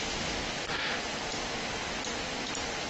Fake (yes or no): no